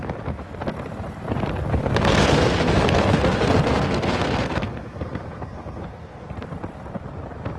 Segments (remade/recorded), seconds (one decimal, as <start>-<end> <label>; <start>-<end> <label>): 0.0-1.7 recorded; 1.7-6.3 remade; 6.3-7.6 recorded